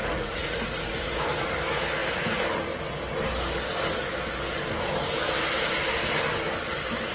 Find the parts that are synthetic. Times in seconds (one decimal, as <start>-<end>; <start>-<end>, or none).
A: 0.0-1.5